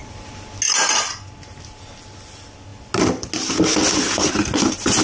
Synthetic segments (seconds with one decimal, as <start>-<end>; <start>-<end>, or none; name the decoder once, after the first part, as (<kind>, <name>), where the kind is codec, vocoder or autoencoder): none

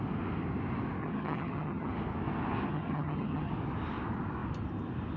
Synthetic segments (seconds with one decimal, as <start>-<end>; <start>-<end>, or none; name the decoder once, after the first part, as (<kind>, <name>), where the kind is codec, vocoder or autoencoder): 1.0-1.9 (vocoder, HiFi-GAN); 2.7-3.5

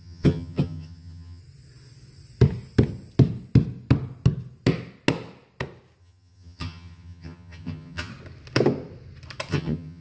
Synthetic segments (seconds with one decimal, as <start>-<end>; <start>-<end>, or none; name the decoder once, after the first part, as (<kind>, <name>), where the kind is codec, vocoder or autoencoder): 0.0-1.4 (vocoder, HiFi-GAN); 6.0-8.1; 9.5-10.0

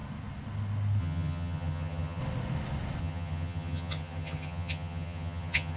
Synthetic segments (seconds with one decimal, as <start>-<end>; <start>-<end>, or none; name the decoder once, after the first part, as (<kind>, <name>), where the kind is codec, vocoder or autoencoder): 1.0-2.2 (vocoder, HiFi-GAN); 3.0-5.8